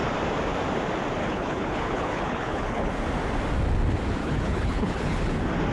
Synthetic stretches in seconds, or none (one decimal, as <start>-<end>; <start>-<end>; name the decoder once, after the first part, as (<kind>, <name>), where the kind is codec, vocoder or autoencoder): 1.2-2.9 (codec, HILCodec); 4.2-5.3